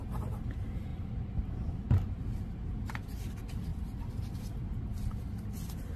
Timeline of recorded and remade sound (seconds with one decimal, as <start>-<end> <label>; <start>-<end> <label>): 0.0-6.0 recorded